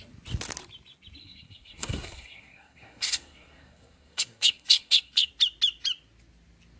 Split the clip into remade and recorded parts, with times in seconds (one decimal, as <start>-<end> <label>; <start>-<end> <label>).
0.0-1.2 recorded; 1.2-5.3 remade; 5.3-6.8 recorded